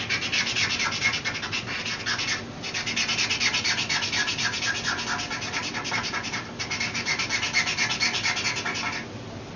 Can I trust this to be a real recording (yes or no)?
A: yes